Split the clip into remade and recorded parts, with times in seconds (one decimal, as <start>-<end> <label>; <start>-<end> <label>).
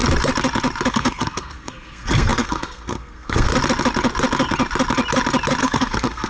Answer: 0.0-0.9 recorded; 0.9-3.5 remade; 3.5-5.6 recorded; 5.6-6.3 remade